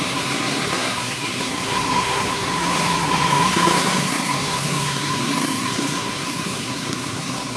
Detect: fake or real fake